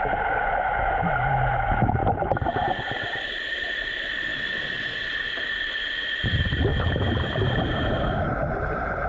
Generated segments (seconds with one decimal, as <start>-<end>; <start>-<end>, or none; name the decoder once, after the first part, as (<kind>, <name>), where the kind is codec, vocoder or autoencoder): 2.0-3.9 (vocoder, BigVGAN v2); 6.7-7.9